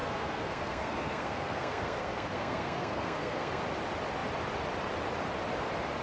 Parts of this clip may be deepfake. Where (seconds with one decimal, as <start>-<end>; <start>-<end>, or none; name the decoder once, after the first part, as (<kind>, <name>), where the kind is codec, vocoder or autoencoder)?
0.0-3.6 (codec, SNAC)